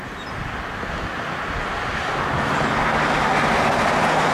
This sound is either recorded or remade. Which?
recorded